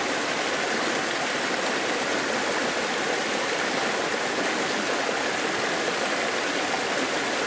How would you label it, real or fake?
real